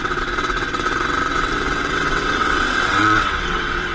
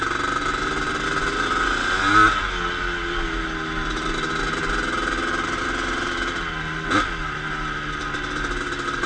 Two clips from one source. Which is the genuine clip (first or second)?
second